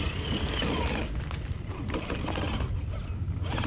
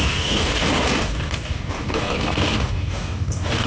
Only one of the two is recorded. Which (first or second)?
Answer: first